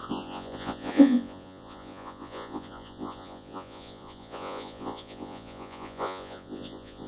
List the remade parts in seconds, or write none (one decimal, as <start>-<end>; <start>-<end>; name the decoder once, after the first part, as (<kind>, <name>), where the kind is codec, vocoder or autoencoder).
0.0-7.1 (vocoder, Vocos)